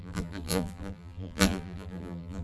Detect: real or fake fake